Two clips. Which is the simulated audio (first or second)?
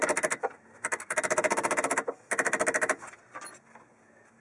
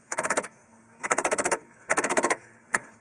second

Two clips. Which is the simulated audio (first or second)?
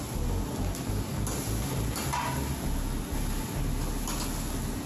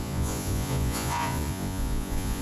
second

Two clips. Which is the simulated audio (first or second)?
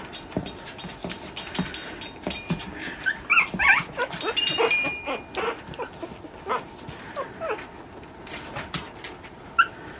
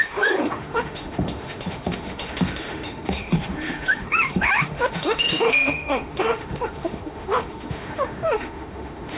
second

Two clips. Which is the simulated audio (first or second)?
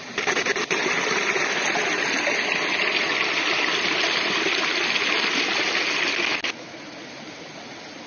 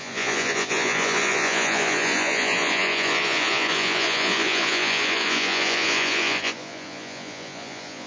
second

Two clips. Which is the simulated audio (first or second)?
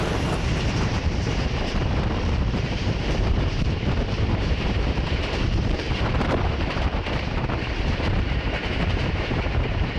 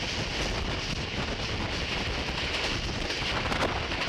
first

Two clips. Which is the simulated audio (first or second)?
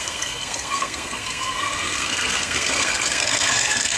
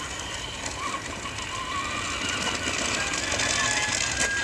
first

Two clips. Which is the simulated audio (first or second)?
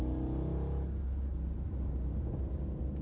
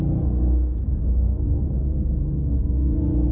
second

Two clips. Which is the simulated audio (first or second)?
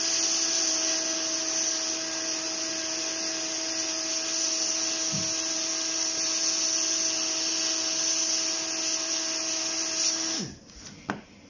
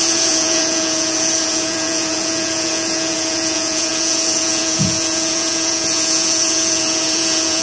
second